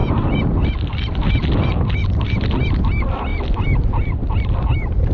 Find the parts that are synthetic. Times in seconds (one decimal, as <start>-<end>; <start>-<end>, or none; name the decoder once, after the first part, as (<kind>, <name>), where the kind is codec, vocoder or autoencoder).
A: 0.0-2.8 (vocoder, BigVGAN v2); 3.3-4.4